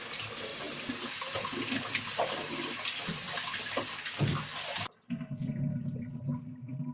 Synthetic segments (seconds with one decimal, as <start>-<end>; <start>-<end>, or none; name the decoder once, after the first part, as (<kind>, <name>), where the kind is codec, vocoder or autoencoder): none